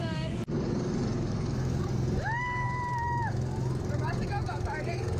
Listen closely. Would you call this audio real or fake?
fake